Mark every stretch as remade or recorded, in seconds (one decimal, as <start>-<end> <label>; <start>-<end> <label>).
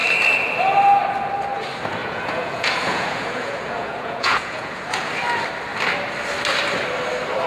0.0-2.0 recorded; 2.0-5.1 remade; 5.1-7.5 recorded